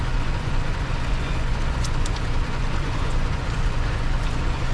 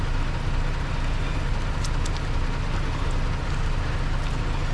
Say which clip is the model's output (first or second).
first